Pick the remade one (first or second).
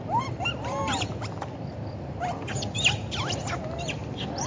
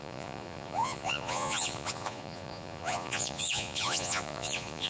second